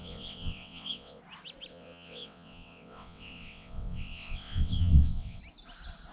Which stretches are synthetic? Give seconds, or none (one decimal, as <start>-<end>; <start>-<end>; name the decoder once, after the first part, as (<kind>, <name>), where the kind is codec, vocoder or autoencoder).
0.0-1.2 (vocoder, WaveNeXt); 1.7-5.4